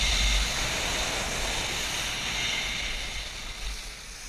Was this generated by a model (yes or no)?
no